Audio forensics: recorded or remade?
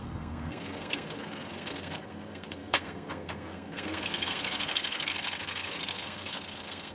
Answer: remade